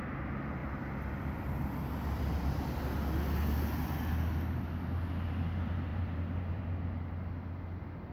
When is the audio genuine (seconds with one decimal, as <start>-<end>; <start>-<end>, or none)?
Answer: 0.0-0.6; 1.9-5.9; 6.6-8.1